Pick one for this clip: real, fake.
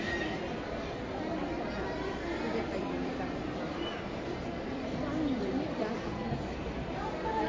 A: fake